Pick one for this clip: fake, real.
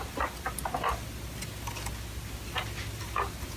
real